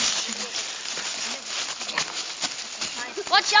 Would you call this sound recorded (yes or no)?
yes